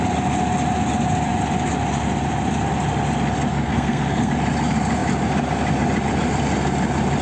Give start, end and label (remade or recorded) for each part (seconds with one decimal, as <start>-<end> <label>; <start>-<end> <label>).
0.0-3.5 recorded; 3.5-4.3 remade; 4.3-7.2 recorded